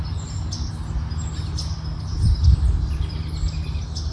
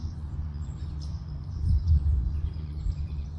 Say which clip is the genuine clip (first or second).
first